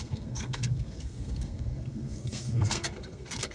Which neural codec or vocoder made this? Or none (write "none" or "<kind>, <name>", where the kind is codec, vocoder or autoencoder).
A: codec, SNAC